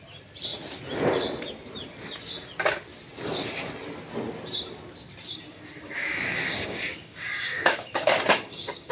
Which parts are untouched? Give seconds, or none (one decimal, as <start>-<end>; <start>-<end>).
0.0-5.5